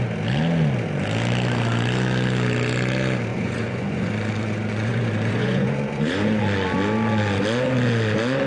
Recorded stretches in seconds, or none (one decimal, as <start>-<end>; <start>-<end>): 0.0-3.3; 6.4-8.5